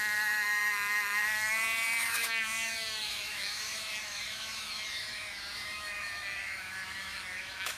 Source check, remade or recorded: remade